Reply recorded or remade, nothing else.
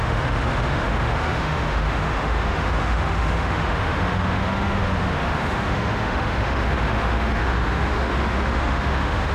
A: remade